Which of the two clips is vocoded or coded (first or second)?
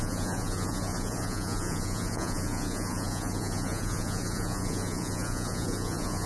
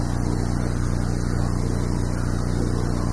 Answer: first